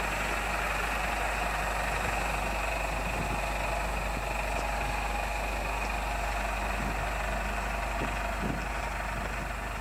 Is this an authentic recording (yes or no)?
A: yes